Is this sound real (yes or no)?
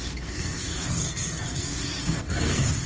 no